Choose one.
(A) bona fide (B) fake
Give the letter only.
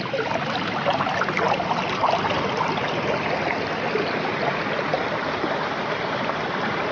A